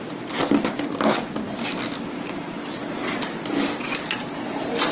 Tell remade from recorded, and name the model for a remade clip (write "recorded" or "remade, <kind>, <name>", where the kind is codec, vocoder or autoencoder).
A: recorded